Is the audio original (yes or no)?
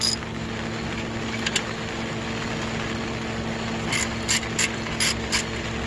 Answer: yes